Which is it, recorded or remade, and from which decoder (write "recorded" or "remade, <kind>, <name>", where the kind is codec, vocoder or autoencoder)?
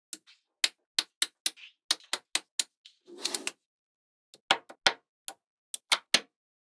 recorded